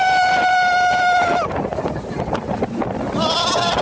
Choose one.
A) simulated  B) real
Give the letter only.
B